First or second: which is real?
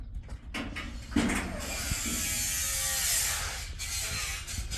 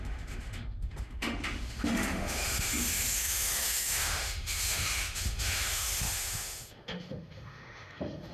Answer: first